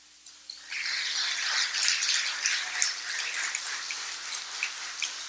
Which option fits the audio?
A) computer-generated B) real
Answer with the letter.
B